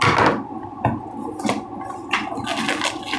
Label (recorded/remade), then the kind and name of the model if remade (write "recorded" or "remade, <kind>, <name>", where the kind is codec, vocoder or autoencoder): recorded